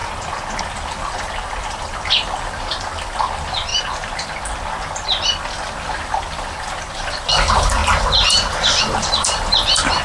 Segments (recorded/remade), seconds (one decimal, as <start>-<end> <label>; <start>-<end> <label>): 0.0-0.6 recorded; 0.6-3.7 remade; 3.7-5.4 recorded; 5.4-7.8 remade; 7.8-8.8 recorded; 8.8-10.0 remade